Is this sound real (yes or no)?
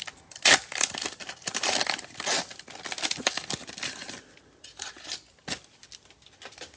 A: yes